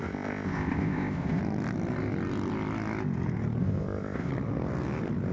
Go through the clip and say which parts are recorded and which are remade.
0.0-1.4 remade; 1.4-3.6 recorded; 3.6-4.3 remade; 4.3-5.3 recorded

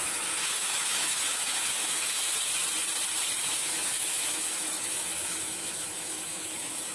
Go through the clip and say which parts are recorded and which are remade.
0.0-2.5 remade; 2.5-3.4 recorded; 3.4-6.9 remade

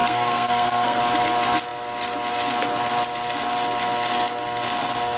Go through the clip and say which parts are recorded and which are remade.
0.0-1.0 remade; 1.0-5.2 recorded

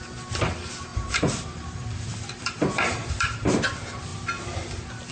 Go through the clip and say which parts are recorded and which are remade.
0.0-0.9 recorded; 0.9-3.6 remade; 3.6-5.1 recorded

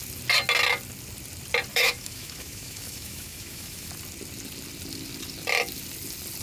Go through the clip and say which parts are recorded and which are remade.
0.0-1.7 recorded; 1.7-3.9 remade; 3.9-6.4 recorded

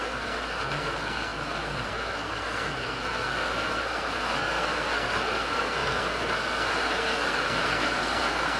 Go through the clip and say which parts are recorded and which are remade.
0.0-8.6 remade